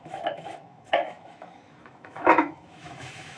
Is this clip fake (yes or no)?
yes